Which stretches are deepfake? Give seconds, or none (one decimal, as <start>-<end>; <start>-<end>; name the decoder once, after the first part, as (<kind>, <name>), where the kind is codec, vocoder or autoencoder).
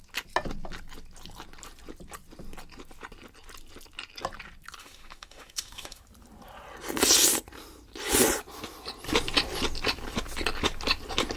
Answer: 4.8-6.0 (autoencoder, DAC-VAE)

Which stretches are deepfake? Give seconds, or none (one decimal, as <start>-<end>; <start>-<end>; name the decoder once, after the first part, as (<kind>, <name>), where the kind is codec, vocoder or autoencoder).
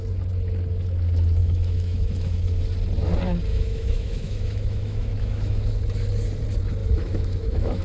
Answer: 1.4-2.6 (autoencoder, DAC-VAE); 3.5-5.8; 6.8-7.8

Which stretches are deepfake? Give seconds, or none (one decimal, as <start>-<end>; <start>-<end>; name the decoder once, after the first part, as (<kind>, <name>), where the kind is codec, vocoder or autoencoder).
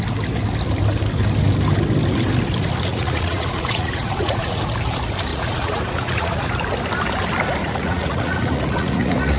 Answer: 2.9-4.6 (vocoder, Vocos); 5.3-6.5; 7.6-9.4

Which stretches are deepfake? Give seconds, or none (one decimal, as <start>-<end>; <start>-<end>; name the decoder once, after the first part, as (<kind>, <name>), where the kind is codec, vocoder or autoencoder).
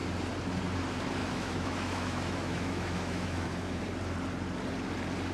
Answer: 1.2-3.8 (autoencoder, DAC-VAE)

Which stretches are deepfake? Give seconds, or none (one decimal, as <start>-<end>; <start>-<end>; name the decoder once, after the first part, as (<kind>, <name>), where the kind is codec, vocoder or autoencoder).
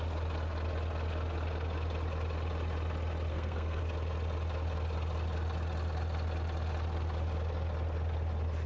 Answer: 3.3-3.8 (codec, SNAC)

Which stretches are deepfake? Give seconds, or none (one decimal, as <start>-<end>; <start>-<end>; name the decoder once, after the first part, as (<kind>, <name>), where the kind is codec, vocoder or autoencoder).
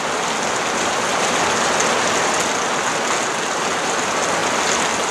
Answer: 4.4-5.1 (vocoder, BigVGAN v2)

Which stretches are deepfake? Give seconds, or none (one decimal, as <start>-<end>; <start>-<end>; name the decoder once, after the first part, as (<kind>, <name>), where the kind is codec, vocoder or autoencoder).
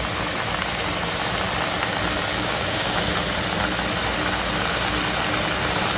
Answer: 2.3-3.0 (codec, DAC)